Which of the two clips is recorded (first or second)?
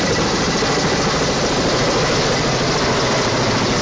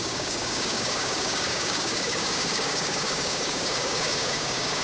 first